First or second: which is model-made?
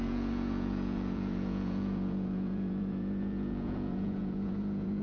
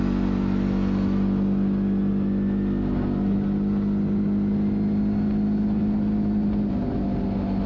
first